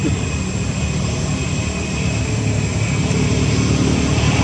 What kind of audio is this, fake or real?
fake